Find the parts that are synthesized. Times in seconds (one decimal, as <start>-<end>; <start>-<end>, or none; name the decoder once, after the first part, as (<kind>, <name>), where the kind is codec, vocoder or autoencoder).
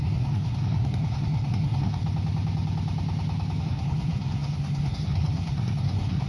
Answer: 0.0-2.0 (codec, SNAC); 3.6-6.3